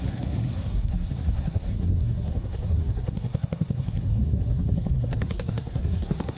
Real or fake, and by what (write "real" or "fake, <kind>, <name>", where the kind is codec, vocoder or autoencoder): fake, codec, SNAC